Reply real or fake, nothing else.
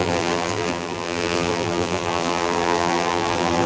fake